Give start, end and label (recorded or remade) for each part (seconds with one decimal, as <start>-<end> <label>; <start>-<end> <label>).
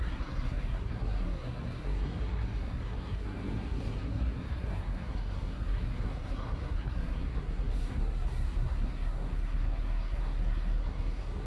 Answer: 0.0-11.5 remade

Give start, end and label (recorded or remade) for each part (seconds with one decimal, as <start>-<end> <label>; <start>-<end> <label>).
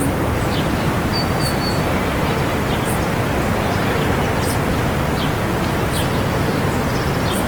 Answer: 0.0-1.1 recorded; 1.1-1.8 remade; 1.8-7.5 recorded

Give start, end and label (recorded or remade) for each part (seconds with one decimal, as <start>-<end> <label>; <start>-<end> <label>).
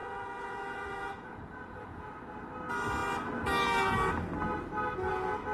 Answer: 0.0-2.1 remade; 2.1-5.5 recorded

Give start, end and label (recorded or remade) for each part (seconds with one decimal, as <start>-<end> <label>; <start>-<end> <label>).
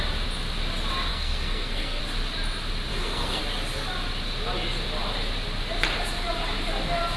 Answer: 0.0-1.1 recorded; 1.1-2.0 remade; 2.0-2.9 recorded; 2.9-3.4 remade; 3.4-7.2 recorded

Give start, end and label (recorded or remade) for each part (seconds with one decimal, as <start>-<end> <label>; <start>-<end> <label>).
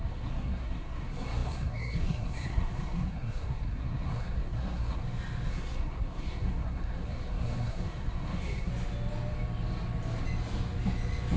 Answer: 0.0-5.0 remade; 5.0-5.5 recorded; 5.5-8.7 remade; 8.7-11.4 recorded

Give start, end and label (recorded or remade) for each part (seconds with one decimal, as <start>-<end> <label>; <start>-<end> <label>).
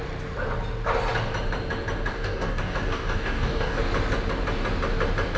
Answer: 0.0-2.1 recorded; 2.1-3.8 remade; 3.8-5.4 recorded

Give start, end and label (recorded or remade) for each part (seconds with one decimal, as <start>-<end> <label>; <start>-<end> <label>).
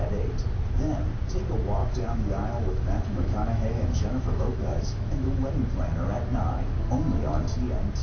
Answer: 0.0-1.8 recorded; 1.8-5.5 remade; 5.5-8.0 recorded